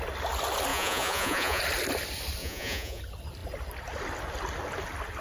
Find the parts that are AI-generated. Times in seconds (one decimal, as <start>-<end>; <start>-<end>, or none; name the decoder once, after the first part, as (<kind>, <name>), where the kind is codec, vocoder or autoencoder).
0.7-1.6 (vocoder, Vocos); 2.4-3.0